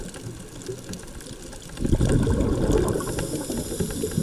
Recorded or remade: recorded